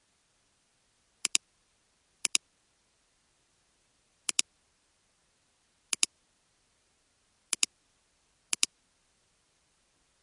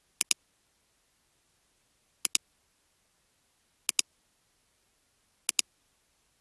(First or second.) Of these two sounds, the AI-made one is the first